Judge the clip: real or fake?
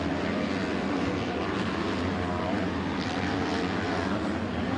real